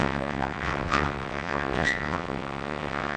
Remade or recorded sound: remade